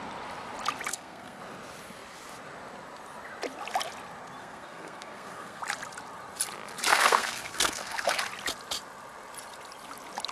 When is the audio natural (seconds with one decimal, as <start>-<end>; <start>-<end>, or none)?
0.0-0.9; 1.4-4.4; 5.6-6.9; 8.2-10.3